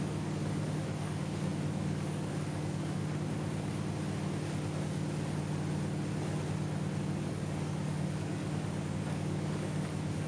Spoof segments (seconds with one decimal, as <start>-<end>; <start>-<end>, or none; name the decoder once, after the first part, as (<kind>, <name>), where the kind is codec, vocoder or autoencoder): 0.0-3.0 (codec, DAC); 7.0-10.3